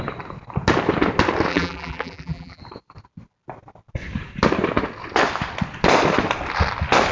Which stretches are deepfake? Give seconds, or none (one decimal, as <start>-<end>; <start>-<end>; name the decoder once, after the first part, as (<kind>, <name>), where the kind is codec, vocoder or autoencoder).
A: 1.5-2.6 (vocoder, BigVGAN v2)